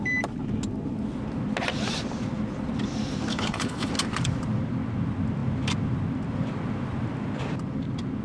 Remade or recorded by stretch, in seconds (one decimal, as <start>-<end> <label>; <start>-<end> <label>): 0.0-3.3 recorded; 3.3-3.9 remade; 3.9-8.2 recorded